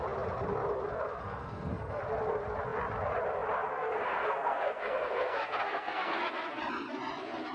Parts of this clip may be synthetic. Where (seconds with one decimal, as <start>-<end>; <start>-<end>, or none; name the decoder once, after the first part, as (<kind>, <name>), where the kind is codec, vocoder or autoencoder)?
1.2-2.0 (codec, SNAC); 3.7-6.3